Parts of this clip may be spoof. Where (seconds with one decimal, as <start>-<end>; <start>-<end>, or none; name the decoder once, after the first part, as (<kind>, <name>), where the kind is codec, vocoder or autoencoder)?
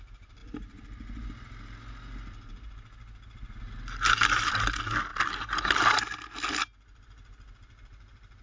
none